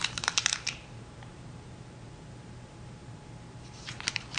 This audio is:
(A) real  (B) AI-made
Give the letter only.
B